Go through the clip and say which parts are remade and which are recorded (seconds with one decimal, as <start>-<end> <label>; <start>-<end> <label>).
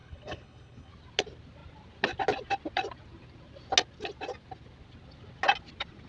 0.0-0.9 remade; 0.9-6.1 recorded